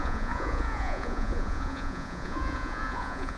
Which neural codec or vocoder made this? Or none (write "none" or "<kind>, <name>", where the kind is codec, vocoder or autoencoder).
vocoder, Vocos